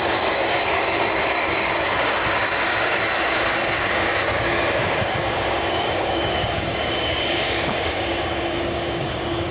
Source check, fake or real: fake